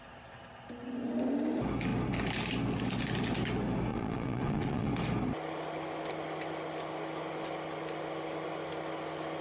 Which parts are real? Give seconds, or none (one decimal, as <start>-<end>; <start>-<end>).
0.0-3.9; 4.9-9.4